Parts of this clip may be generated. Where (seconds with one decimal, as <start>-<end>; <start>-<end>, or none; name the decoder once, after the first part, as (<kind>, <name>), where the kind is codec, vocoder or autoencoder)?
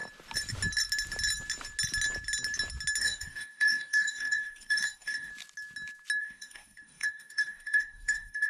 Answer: 3.0-5.3 (codec, DAC); 6.2-8.5